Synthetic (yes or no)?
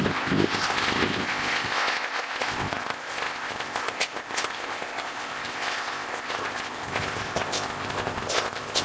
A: yes